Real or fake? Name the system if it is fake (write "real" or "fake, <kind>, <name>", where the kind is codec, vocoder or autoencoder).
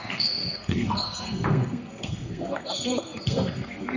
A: fake, codec, SNAC